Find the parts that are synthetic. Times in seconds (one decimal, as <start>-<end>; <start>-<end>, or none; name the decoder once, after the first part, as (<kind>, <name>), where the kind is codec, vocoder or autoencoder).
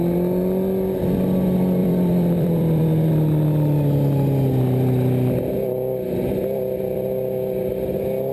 1.8-3.1 (vocoder, BigVGAN v2)